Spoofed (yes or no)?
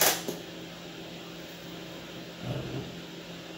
no